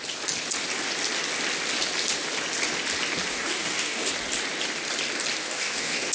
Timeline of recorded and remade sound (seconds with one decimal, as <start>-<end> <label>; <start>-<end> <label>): 0.0-3.3 recorded; 3.3-4.1 remade; 4.1-5.4 recorded; 5.4-6.1 remade